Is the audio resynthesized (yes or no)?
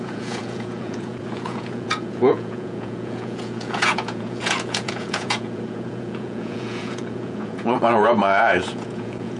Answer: yes